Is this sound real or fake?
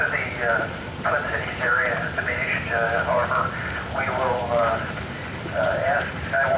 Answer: fake